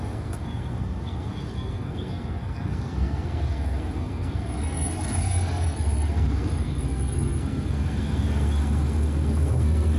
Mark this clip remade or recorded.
remade